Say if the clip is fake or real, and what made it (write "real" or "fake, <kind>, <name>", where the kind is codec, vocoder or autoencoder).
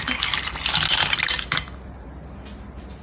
real